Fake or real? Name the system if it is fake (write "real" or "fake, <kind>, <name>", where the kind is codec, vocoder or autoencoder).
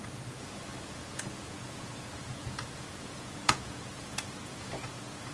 fake, vocoder, Vocos